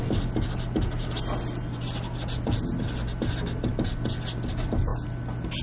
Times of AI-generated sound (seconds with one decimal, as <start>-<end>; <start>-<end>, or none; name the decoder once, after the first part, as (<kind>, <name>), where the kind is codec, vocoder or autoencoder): none